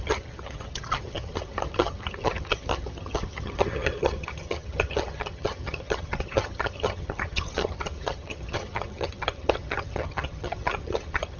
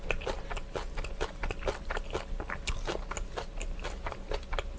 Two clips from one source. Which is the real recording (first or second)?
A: second